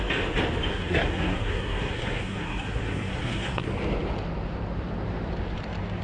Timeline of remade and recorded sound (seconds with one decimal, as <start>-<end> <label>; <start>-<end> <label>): 0.0-0.7 recorded; 0.7-3.6 remade; 3.6-6.0 recorded